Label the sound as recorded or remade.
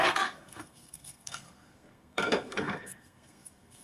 remade